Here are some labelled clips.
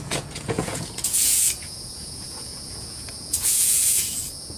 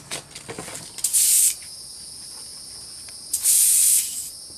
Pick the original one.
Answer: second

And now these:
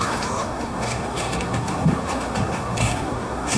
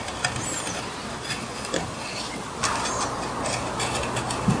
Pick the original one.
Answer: second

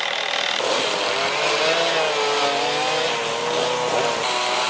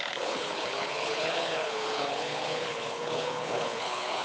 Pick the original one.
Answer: first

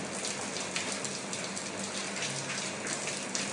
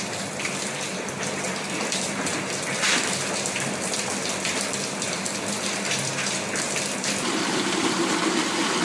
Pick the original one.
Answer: first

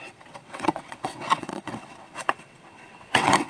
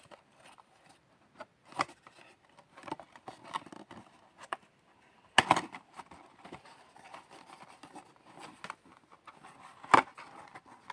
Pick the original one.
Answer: second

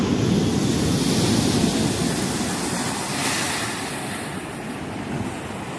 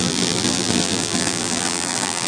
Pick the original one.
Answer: first